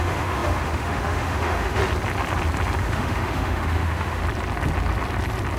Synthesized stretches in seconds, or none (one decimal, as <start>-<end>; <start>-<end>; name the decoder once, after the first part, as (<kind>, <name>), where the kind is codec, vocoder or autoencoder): 0.0-1.8 (autoencoder, DAC-VAE); 2.8-4.2